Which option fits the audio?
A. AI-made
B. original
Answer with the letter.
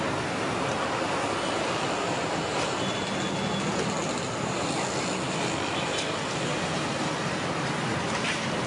B